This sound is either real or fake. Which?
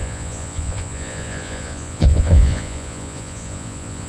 fake